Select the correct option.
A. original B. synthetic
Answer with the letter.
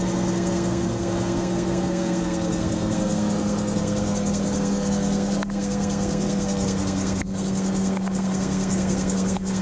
B